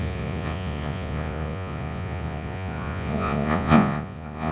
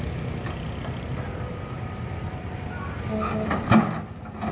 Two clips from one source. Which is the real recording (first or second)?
second